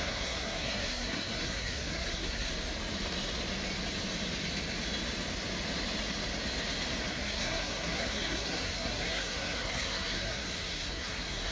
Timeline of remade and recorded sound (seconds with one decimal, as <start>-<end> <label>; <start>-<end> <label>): 0.0-2.5 remade; 2.5-7.1 recorded; 7.1-11.5 remade